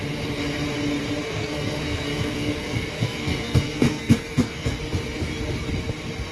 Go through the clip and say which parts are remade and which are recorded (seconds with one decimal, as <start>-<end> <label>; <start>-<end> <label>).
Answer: 0.0-1.2 recorded; 1.2-4.8 remade; 4.8-6.3 recorded